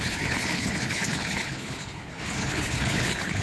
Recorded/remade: remade